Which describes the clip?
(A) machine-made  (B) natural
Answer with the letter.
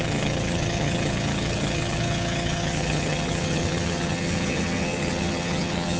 A